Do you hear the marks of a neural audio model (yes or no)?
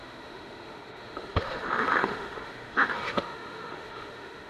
yes